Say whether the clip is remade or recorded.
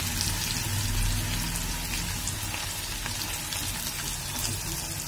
recorded